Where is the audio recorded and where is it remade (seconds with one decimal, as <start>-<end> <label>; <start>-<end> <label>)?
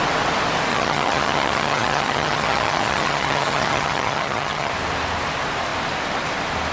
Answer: 0.0-0.7 recorded; 0.7-4.7 remade; 4.7-6.7 recorded